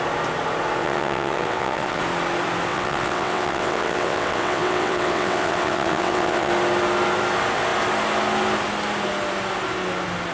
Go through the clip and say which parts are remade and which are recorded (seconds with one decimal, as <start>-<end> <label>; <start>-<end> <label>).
0.0-0.8 recorded; 0.8-2.0 remade; 2.0-2.7 recorded; 2.7-6.5 remade; 6.5-10.3 recorded